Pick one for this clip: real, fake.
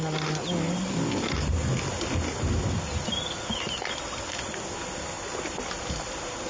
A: real